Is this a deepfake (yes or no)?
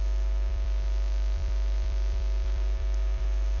yes